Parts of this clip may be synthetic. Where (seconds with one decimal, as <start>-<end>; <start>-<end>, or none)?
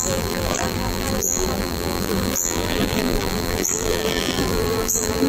0.0-5.3